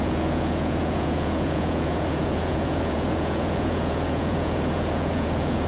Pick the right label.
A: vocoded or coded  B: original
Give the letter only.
A